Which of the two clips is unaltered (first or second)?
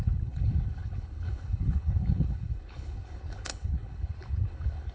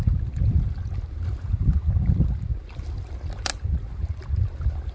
second